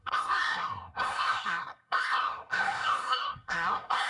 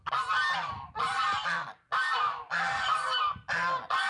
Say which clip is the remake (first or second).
first